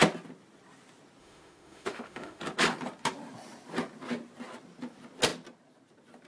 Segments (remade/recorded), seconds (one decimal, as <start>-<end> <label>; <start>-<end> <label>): 0.0-1.2 recorded; 1.2-2.4 remade; 2.4-6.3 recorded